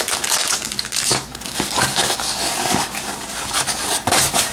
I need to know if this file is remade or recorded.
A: remade